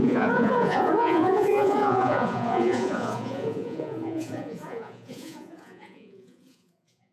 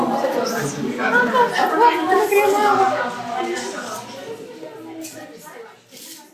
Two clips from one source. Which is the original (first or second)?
second